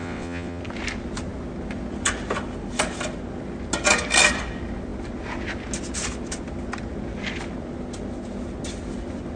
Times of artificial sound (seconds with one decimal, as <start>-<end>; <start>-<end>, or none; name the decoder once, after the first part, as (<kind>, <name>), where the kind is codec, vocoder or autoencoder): 0.0-0.6 (vocoder, WaveNeXt)